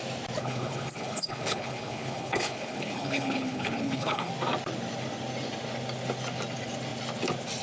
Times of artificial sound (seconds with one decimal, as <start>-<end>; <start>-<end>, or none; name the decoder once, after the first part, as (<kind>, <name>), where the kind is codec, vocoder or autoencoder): 0.4-4.3 (codec, HILCodec)